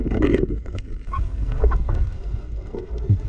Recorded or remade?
remade